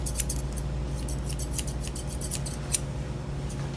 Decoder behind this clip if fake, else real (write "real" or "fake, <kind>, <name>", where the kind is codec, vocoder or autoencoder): real